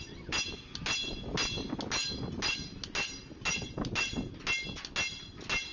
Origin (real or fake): real